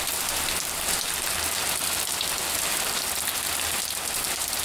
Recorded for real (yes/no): yes